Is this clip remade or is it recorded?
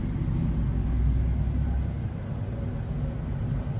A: recorded